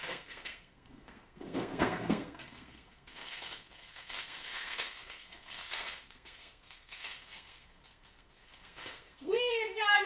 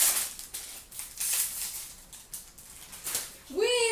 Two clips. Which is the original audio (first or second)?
second